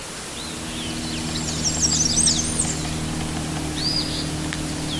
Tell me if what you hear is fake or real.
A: real